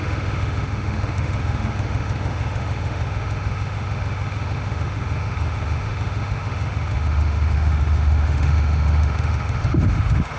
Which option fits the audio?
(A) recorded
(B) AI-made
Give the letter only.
B